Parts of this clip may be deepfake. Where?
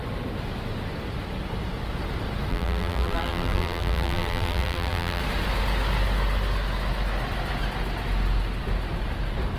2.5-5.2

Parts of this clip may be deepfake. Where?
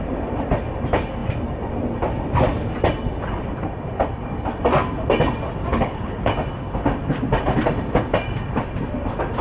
5.7-6.3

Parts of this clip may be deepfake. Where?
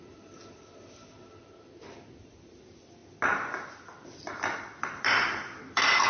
none